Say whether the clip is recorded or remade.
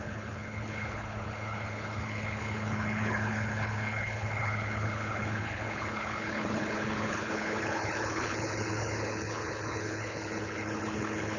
remade